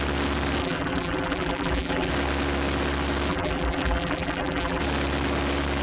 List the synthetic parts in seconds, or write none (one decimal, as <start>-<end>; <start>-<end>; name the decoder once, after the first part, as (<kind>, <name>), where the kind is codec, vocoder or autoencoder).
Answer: 0.6-2.1 (vocoder, BigVGAN v2); 3.3-4.8